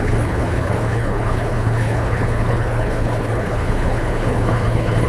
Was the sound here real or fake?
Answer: fake